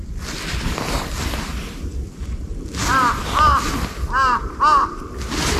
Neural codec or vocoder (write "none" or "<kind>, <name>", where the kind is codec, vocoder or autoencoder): none